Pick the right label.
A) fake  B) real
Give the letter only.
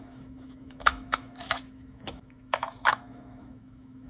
A